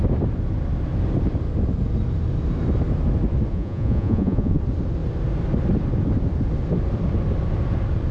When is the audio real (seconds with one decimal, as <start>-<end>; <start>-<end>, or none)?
0.0-3.5; 4.6-8.1